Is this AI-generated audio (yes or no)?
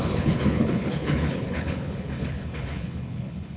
yes